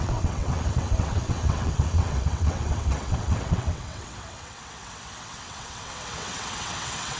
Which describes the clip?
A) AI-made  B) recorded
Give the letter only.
A